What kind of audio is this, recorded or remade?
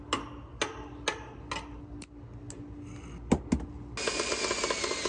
recorded